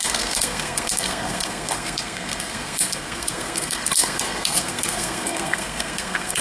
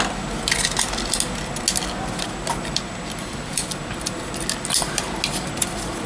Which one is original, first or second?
second